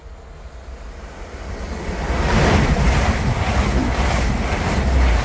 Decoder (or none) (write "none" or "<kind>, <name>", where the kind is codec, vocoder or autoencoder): none